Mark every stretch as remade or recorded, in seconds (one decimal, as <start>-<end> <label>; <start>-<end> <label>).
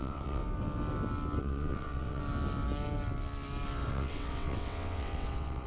0.0-0.4 remade; 0.4-1.4 recorded; 1.4-2.2 remade; 2.2-3.9 recorded; 3.9-5.7 remade